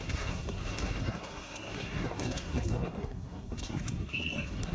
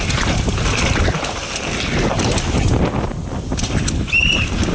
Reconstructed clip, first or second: first